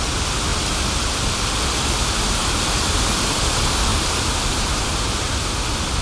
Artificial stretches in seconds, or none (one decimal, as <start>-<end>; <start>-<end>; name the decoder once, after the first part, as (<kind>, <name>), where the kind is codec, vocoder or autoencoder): 3.9-4.9 (vocoder, BigVGAN v2)